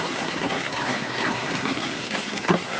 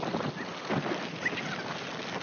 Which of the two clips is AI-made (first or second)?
first